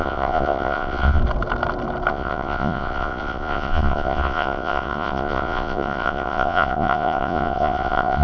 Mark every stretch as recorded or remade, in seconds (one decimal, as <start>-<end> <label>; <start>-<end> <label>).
0.0-1.2 remade; 1.2-2.1 recorded; 2.1-8.2 remade